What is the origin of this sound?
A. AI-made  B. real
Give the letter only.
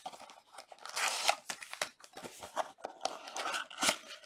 B